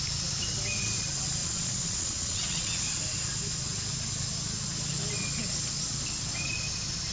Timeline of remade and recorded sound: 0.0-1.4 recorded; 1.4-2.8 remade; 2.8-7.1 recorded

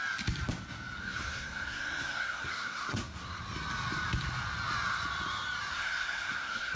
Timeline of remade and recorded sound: 0.0-1.0 recorded; 1.0-3.4 remade; 3.4-5.7 recorded; 5.7-6.8 remade

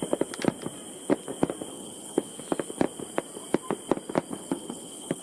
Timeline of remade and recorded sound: 0.0-1.7 recorded; 1.7-2.3 remade; 2.3-4.3 recorded; 4.3-5.2 remade

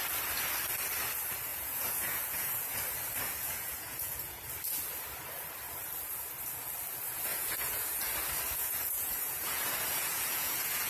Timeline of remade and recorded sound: 0.0-1.5 recorded; 1.5-2.8 remade; 2.8-3.4 recorded; 3.4-4.4 remade; 4.4-7.3 recorded; 7.3-8.1 remade; 8.1-8.6 recorded; 8.6-10.9 remade